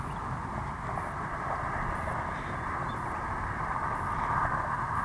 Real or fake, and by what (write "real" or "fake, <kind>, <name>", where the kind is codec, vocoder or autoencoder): real